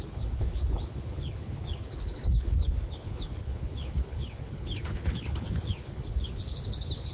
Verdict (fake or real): fake